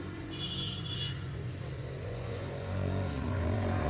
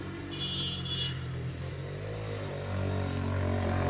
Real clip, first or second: second